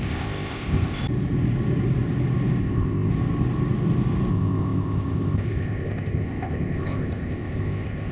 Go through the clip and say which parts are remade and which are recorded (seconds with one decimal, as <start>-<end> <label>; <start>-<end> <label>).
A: 0.0-1.0 remade; 1.0-2.6 recorded; 2.6-3.1 remade; 3.1-4.3 recorded; 4.3-8.1 remade

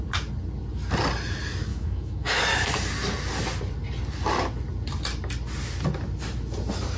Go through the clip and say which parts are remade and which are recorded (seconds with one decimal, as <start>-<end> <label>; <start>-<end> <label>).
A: 0.0-1.7 recorded; 1.7-2.4 remade; 2.4-7.0 recorded

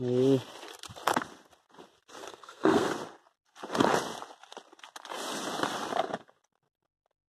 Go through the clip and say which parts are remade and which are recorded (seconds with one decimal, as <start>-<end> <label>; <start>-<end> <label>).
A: 0.0-2.2 recorded; 2.2-2.9 remade; 2.9-7.3 recorded

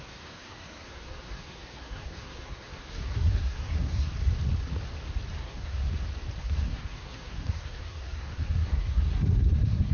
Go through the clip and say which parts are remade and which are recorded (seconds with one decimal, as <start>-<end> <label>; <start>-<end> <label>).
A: 0.0-4.1 remade; 4.1-5.3 recorded; 5.3-5.9 remade; 5.9-6.4 recorded; 6.4-9.9 remade

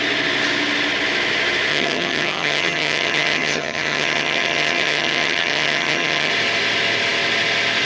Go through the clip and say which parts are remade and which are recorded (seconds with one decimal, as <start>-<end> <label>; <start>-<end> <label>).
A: 0.0-1.7 recorded; 1.7-6.3 remade; 6.3-7.8 recorded

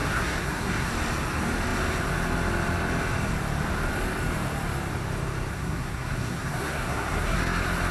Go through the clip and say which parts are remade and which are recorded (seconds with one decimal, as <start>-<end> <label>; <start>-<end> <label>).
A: 0.0-0.9 remade; 0.9-5.5 recorded; 5.5-7.4 remade; 7.4-7.9 recorded

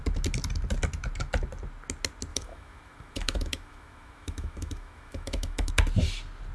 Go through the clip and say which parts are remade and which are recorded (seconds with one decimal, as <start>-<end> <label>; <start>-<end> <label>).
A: 0.0-2.3 recorded; 2.3-5.7 remade; 5.7-6.5 recorded

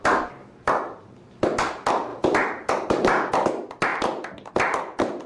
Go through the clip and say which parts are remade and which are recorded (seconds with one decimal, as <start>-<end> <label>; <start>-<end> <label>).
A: 0.0-2.1 recorded; 2.1-3.3 remade; 3.3-5.3 recorded